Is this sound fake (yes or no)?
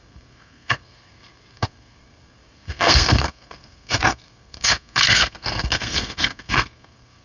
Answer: yes